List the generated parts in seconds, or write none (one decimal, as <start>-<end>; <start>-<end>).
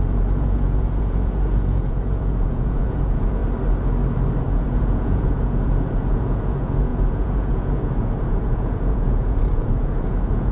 0.0-3.4; 4.4-10.5